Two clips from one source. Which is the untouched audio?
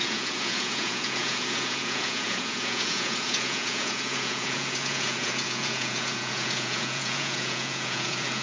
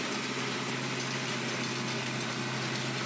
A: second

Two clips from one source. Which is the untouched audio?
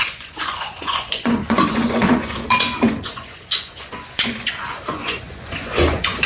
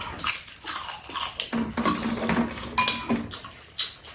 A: second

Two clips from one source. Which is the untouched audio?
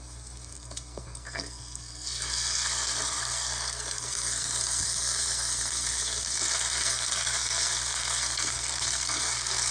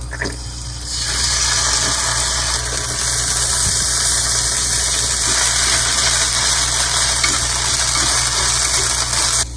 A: second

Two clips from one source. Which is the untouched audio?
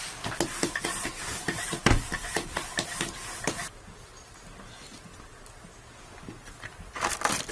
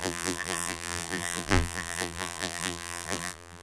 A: first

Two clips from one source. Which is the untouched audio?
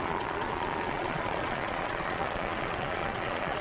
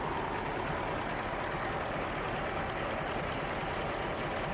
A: second